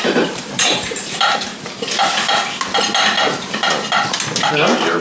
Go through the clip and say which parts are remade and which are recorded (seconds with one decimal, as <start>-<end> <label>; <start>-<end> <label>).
0.0-1.5 remade; 1.5-4.5 recorded; 4.5-5.0 remade